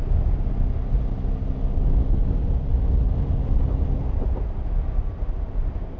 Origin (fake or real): real